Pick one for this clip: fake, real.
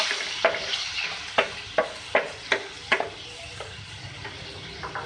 real